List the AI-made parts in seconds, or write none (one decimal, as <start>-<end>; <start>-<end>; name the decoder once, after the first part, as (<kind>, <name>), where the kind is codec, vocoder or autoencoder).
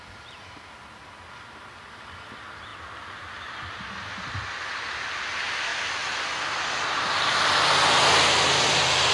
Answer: none